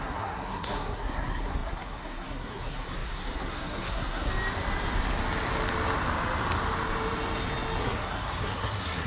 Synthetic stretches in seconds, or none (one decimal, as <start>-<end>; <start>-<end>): 0.0-4.3; 7.8-9.1